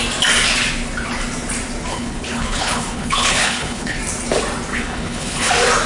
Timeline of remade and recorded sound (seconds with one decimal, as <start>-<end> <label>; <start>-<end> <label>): 0.0-1.9 recorded; 1.9-4.0 remade; 4.0-4.7 recorded; 4.7-5.5 remade; 5.5-5.9 recorded